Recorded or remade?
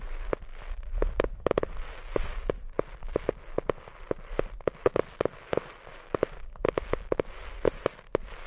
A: recorded